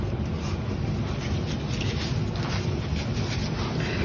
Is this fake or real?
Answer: real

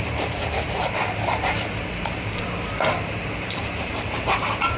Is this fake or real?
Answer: fake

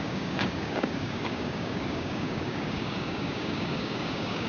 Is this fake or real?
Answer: fake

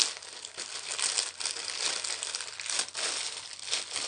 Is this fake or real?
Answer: real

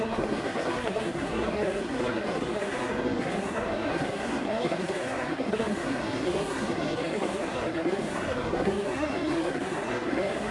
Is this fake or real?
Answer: fake